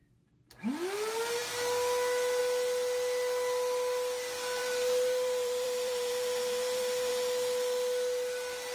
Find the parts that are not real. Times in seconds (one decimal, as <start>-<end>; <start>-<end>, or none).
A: 4.6-7.1